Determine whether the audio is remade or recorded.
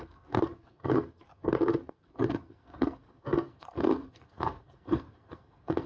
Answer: remade